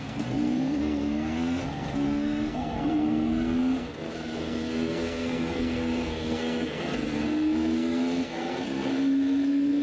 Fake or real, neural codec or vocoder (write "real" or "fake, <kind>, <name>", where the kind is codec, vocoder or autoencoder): fake, codec, SNAC